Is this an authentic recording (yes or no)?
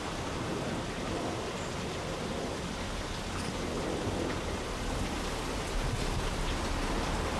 yes